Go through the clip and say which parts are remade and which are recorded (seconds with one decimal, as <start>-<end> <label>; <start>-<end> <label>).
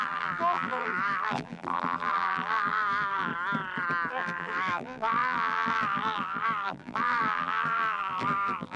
0.0-3.3 remade; 3.3-4.1 recorded; 4.1-8.8 remade